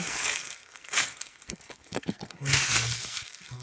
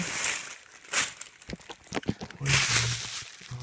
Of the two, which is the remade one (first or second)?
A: first